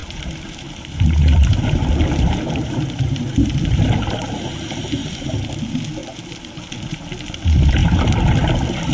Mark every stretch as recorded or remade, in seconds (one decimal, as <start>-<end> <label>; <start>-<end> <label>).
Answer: 0.0-4.3 remade; 4.3-5.0 recorded; 5.0-5.6 remade; 5.6-8.9 recorded